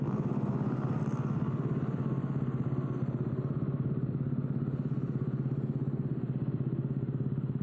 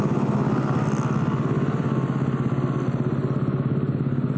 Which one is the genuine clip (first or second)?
second